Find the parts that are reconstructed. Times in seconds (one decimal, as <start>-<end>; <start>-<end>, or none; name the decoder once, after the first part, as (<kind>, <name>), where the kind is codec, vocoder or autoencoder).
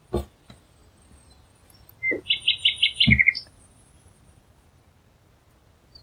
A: none